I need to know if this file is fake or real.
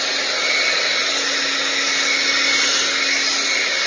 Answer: real